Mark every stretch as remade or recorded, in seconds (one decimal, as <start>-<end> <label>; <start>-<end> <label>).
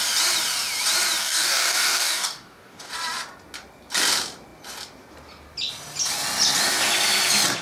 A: 0.0-1.2 recorded; 1.2-2.9 remade; 2.9-7.6 recorded